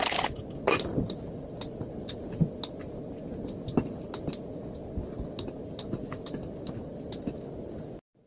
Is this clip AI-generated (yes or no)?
no